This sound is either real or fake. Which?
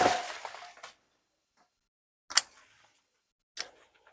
real